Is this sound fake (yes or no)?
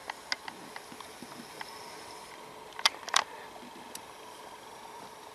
no